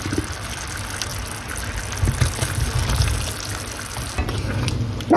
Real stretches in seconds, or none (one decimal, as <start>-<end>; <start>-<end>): 0.0-5.2